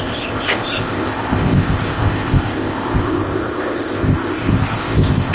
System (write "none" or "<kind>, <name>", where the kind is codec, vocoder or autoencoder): codec, ZipCodec